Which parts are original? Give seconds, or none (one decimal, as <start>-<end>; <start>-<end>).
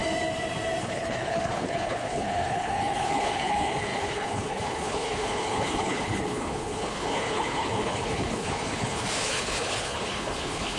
0.0-0.8